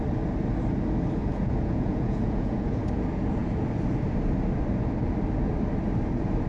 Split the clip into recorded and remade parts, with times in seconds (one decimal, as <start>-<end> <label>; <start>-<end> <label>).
0.0-1.3 recorded; 1.3-2.8 remade; 2.8-6.5 recorded